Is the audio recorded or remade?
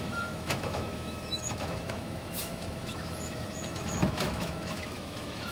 remade